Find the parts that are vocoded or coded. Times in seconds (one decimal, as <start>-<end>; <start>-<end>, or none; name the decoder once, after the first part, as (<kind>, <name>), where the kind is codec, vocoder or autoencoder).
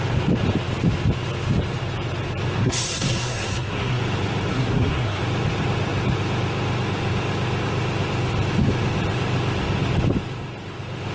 2.6-4.0 (codec, SNAC); 4.5-5.2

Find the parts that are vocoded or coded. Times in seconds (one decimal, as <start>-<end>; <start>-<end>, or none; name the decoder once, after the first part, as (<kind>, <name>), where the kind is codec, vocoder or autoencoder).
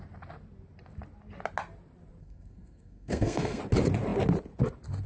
2.2-3.6 (codec, SNAC)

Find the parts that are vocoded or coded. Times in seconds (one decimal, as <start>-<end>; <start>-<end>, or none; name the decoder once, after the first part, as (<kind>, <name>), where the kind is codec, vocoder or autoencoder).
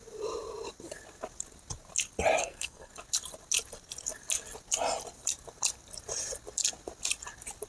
2.4-2.9 (codec, SNAC)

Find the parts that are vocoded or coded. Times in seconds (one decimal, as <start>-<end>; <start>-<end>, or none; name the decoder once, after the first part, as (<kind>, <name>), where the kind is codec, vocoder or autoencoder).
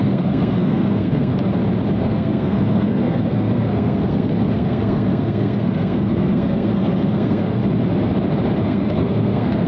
0.0-1.3 (codec, SNAC); 2.0-7.6; 8.6-9.7